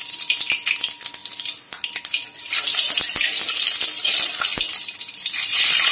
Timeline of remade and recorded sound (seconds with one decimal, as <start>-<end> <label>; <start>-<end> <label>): 0.0-5.9 recorded